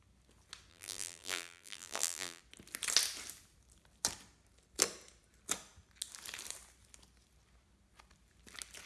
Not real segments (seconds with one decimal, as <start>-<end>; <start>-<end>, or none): 0.7-2.4